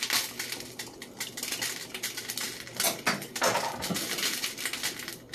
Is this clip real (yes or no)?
yes